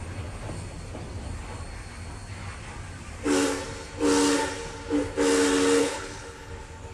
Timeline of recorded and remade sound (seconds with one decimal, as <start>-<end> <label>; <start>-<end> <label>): 0.0-5.8 recorded; 5.8-6.5 remade; 6.5-6.9 recorded